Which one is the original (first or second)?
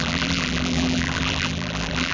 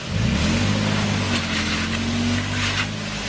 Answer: second